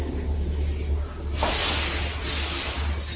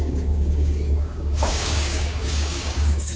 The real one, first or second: first